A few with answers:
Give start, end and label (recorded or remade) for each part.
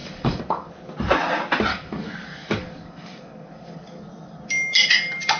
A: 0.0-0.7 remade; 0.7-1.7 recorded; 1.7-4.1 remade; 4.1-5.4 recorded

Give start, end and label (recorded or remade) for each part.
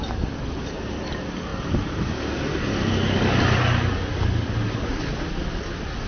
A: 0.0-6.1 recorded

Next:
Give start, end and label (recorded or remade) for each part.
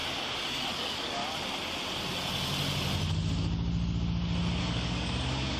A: 0.0-0.5 recorded; 0.5-1.2 remade; 1.2-4.6 recorded; 4.6-5.6 remade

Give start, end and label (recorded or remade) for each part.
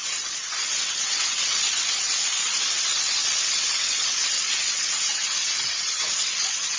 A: 0.0-6.8 remade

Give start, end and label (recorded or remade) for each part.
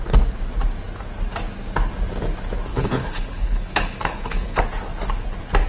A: 0.0-2.7 recorded; 2.7-4.6 remade; 4.6-5.7 recorded